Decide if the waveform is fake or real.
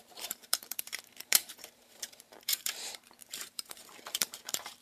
fake